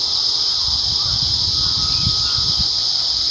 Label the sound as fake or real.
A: fake